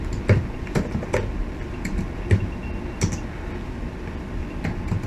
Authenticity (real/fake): real